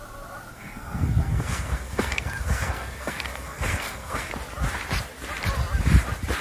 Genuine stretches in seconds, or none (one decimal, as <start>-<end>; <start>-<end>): 0.0-0.5; 4.3-6.4